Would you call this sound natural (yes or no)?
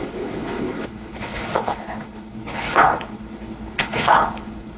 no